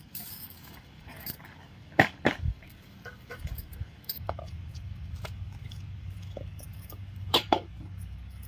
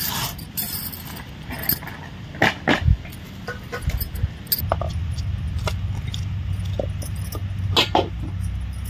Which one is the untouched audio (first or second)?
second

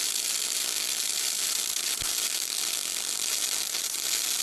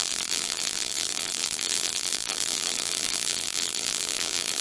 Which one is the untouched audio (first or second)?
first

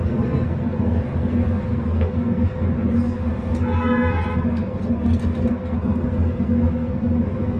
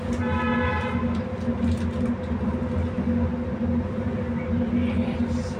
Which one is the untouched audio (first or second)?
second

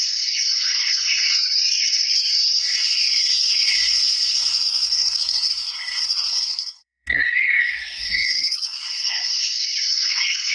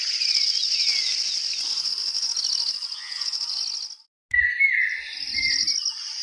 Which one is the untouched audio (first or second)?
second